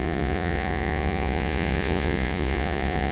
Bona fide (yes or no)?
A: no